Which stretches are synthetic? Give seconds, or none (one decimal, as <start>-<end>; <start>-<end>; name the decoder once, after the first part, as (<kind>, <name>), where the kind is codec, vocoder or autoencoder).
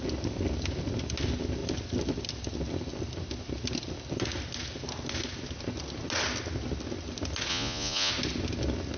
7.5-8.1 (vocoder, Vocos)